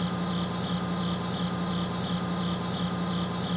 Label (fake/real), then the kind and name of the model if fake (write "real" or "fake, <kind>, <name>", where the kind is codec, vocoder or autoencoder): real